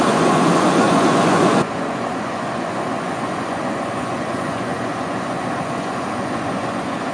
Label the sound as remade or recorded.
remade